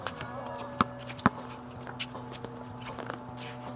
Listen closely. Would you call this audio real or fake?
real